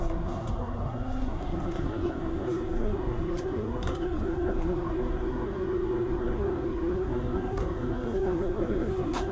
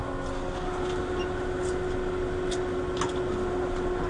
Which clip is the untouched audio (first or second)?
second